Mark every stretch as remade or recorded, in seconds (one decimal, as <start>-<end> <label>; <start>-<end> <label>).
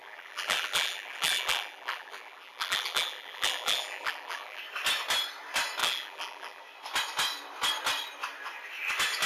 0.0-4.6 remade; 4.6-5.8 recorded; 5.8-6.6 remade; 6.6-9.3 recorded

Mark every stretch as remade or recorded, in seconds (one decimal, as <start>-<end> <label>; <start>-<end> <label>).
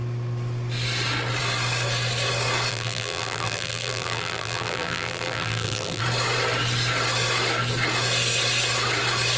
0.0-2.7 recorded; 2.7-6.0 remade; 6.0-9.4 recorded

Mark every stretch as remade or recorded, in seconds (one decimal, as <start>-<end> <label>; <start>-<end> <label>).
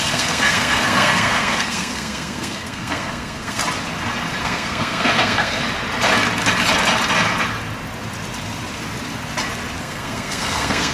0.0-3.6 remade; 3.6-4.4 recorded; 4.4-5.6 remade; 5.6-9.8 recorded; 9.8-10.9 remade